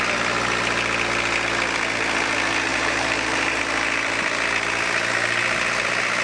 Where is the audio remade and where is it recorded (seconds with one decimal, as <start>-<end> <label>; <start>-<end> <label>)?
0.0-2.7 recorded; 2.7-3.6 remade; 3.6-6.2 recorded

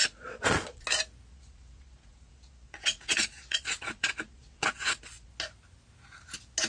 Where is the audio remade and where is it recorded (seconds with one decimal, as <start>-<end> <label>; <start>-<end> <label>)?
0.0-0.8 remade; 0.8-1.3 recorded; 1.3-5.3 remade; 5.3-6.7 recorded

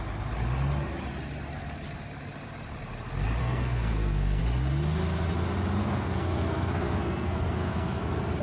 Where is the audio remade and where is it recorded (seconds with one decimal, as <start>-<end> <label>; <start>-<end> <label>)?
0.0-3.4 recorded; 3.4-4.4 remade; 4.4-5.8 recorded; 5.8-8.0 remade; 8.0-8.4 recorded

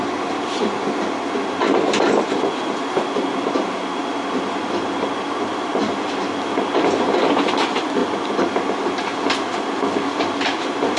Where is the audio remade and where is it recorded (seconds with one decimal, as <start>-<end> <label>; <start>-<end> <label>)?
0.0-11.0 recorded